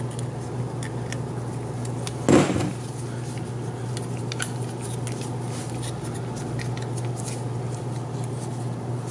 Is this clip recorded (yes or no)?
yes